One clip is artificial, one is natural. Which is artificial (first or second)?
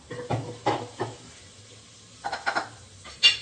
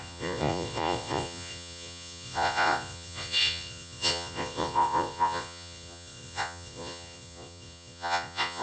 second